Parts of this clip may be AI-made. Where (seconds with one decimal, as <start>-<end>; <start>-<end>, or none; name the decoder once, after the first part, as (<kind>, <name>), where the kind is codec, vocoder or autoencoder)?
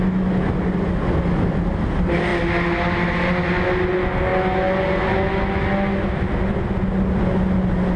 none